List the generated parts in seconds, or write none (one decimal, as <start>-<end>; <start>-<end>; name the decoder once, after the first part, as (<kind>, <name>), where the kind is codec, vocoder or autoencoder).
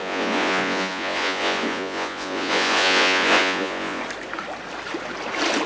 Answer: 0.0-4.0 (vocoder, Vocos)